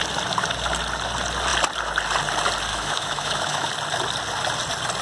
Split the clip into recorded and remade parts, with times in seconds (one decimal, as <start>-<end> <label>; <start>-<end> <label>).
0.0-2.7 recorded; 2.7-3.7 remade; 3.7-5.0 recorded